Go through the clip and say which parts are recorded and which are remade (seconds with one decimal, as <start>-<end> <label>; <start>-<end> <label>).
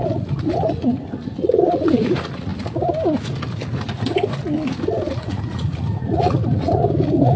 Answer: 0.0-2.5 remade; 2.5-5.1 recorded; 5.1-7.4 remade